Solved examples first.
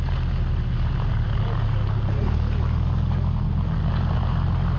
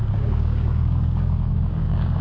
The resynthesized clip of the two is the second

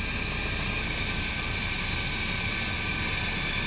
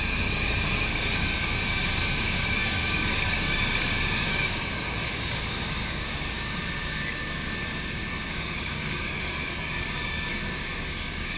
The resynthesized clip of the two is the second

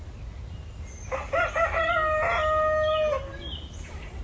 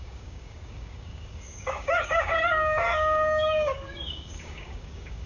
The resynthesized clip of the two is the second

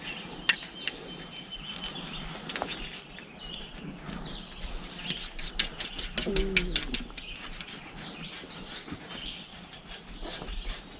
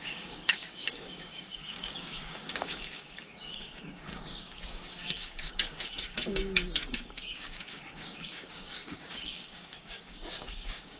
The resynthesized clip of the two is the second